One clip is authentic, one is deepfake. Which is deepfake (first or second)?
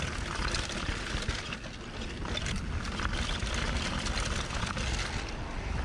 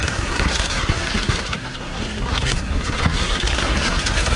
second